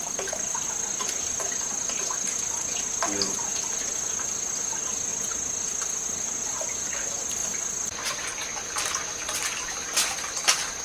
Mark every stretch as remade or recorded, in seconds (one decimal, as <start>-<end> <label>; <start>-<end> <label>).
0.0-10.8 recorded